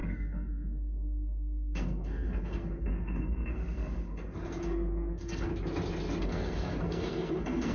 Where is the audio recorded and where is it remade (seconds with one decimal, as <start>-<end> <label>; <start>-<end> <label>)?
0.0-5.5 remade; 5.5-6.2 recorded; 6.2-7.7 remade